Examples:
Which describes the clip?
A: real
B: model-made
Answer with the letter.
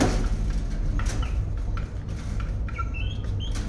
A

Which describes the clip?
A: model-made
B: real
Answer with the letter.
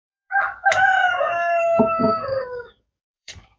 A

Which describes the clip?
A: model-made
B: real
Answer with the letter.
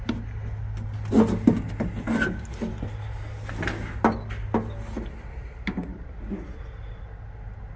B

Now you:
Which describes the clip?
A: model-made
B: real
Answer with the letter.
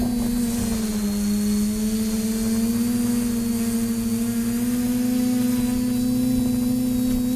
B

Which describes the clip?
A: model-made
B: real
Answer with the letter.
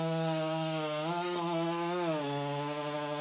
A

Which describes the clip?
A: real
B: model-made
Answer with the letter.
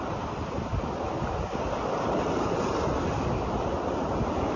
A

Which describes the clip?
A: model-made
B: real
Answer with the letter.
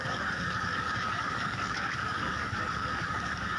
A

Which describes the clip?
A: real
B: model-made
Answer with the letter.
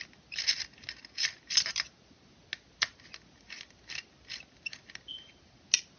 A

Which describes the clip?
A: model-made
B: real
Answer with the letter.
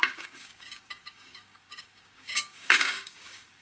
A